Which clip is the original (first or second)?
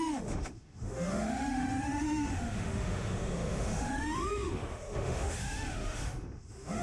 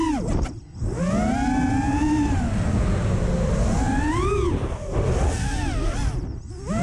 second